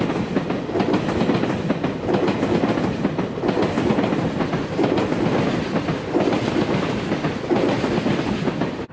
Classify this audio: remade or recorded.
recorded